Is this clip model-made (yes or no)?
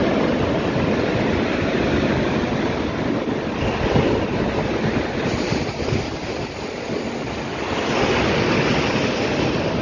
no